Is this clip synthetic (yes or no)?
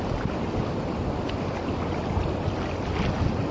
no